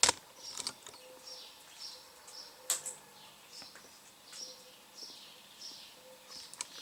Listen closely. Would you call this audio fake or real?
real